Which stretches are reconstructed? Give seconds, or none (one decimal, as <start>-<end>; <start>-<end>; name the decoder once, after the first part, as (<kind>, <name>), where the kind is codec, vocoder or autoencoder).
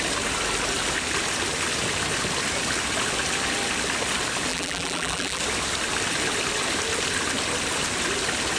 4.5-5.4 (vocoder, BigVGAN v2)